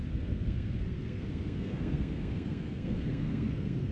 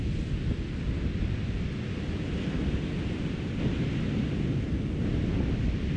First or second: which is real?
second